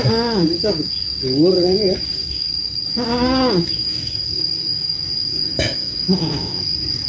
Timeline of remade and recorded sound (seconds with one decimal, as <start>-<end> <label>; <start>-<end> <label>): 0.0-7.1 remade